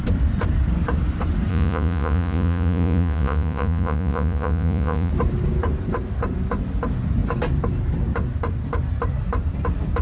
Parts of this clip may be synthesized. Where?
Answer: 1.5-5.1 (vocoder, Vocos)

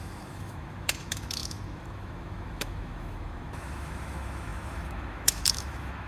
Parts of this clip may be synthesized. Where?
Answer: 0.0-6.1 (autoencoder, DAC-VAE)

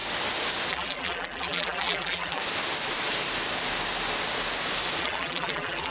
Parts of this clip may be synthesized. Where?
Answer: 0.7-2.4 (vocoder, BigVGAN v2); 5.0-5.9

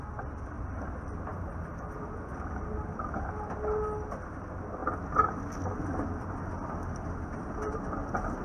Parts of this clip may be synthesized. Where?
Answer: none

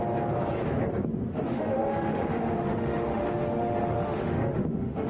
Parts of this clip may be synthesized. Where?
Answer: 1.3-5.1 (autoencoder, DAC-VAE)